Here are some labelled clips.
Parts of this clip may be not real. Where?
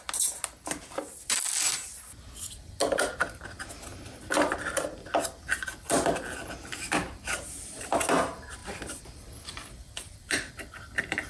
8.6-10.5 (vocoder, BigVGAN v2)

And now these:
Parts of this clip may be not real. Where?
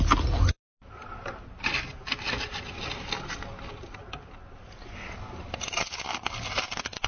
none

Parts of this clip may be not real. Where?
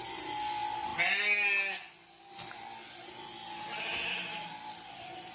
none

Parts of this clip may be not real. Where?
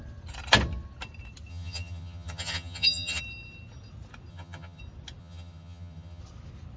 1.5-3.2 (vocoder, HiFi-GAN); 4.3-4.8; 5.2-6.2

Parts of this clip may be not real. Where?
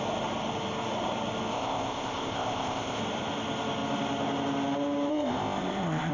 1.5-3.0 (codec, ZipCodec); 5.1-6.1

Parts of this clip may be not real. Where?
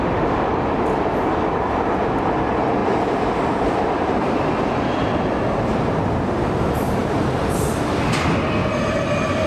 7.0-7.7 (vocoder, BigVGAN v2); 8.6-9.5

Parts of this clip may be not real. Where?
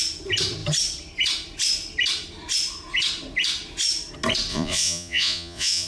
4.5-5.9 (vocoder, Vocos)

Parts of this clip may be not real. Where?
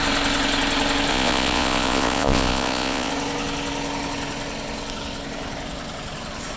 1.1-3.1 (vocoder, Vocos)